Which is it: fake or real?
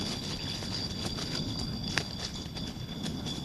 fake